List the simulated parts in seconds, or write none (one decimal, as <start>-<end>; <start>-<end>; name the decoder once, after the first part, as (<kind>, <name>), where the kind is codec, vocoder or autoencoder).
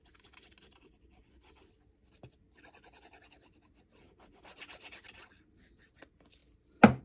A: none